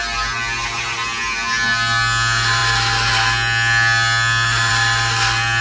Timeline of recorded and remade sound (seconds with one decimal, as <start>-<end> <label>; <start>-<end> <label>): 0.0-5.6 recorded